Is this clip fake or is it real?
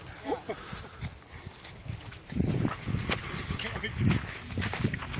real